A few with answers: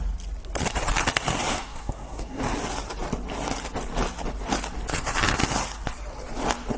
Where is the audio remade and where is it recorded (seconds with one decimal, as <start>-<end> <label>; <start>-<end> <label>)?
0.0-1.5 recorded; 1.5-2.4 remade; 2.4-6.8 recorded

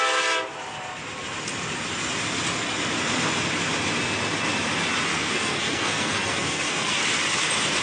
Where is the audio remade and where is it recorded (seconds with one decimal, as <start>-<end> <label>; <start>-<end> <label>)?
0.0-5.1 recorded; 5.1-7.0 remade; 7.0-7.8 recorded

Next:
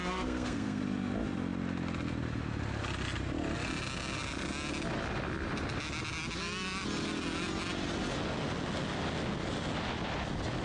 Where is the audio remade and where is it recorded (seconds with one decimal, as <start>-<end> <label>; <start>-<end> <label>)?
0.0-0.8 remade; 0.8-10.6 recorded